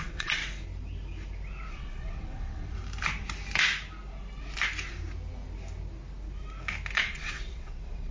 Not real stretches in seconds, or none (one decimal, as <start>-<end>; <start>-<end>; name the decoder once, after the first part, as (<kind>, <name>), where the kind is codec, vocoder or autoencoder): 0.0-0.4 (vocoder, WaveNeXt); 1.7-2.8; 7.0-8.1